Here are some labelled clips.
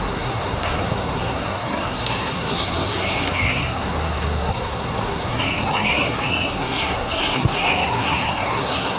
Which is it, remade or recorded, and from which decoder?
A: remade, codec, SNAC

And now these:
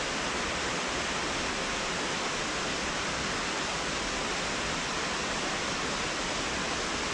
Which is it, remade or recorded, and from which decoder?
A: recorded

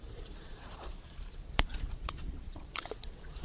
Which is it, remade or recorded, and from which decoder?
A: remade, vocoder, Vocos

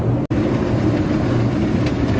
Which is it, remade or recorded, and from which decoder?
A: recorded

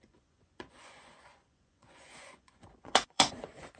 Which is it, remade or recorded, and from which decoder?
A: remade, vocoder, Vocos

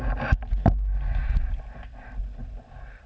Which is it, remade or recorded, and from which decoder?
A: recorded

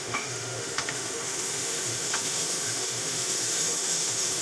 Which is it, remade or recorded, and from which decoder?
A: remade, autoencoder, DAC-VAE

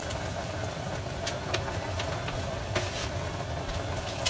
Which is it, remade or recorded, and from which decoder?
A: recorded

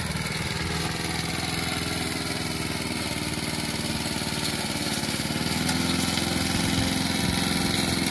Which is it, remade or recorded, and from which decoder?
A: recorded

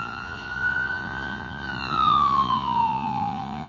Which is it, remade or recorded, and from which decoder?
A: remade, vocoder, Vocos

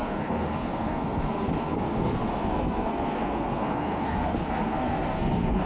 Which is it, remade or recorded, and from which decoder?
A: remade, codec, SNAC